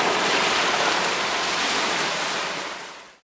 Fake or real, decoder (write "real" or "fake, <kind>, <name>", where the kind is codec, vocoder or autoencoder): fake, vocoder, BigVGAN v2